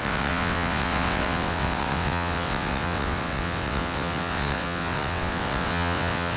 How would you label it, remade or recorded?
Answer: remade